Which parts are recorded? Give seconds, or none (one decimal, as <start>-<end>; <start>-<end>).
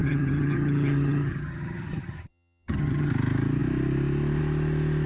3.1-5.1